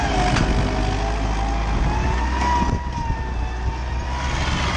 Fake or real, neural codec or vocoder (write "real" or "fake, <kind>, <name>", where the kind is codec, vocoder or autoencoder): real